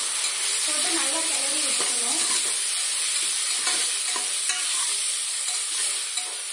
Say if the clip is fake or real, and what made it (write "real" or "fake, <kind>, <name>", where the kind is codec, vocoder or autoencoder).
real